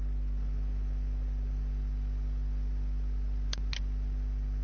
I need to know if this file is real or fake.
real